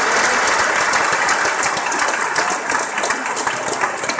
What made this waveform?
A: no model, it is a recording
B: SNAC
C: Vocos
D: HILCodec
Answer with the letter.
A